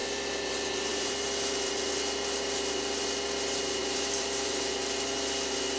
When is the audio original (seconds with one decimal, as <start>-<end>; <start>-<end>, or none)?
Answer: 0.0-0.9; 1.9-3.8; 4.7-5.8